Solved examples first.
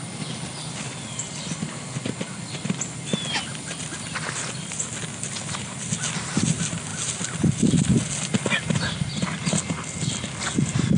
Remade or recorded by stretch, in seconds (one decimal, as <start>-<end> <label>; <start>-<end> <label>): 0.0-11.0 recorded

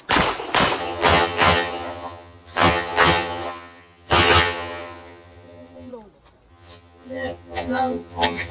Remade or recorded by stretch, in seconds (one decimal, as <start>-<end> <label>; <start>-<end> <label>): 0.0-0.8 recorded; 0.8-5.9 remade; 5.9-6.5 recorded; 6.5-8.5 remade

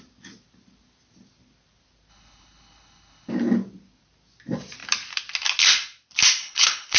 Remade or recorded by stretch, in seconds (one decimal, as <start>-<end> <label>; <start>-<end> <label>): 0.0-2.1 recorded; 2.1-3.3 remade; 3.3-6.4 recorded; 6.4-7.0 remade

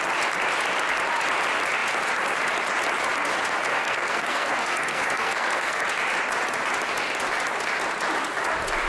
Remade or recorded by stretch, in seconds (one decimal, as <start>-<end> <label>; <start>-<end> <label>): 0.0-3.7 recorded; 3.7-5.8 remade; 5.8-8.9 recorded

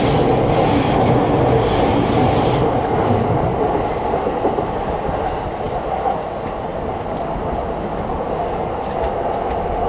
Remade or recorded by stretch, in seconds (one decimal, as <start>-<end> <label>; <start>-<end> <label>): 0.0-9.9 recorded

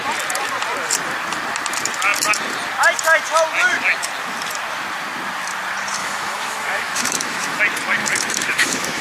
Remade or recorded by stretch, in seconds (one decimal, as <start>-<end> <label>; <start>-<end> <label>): 0.0-6.0 recorded; 6.0-7.6 remade; 7.6-8.0 recorded; 8.0-9.0 remade